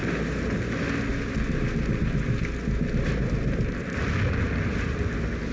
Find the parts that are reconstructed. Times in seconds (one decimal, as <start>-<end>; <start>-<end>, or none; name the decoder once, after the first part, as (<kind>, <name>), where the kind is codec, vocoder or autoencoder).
none